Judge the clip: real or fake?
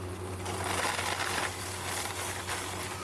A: real